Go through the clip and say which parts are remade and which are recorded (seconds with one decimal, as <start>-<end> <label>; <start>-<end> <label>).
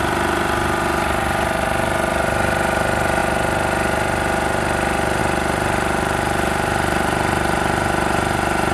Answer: 0.0-8.7 recorded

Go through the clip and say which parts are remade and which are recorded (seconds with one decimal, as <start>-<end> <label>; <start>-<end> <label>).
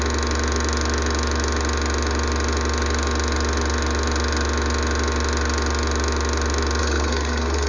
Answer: 0.0-6.8 recorded; 6.8-7.7 remade